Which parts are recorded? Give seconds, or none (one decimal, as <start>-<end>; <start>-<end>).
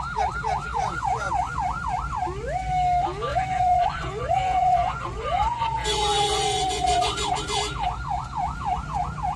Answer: 0.0-0.7; 1.5-3.3; 7.6-9.4